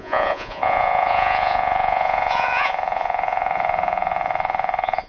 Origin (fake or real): fake